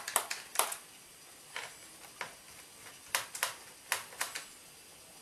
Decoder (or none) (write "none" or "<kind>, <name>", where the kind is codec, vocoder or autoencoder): none